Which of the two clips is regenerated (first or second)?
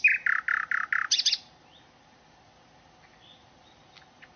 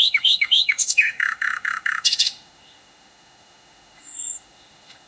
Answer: second